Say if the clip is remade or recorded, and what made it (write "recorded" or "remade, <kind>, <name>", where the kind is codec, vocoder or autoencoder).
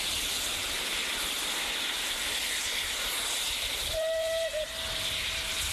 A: remade, vocoder, BigVGAN v2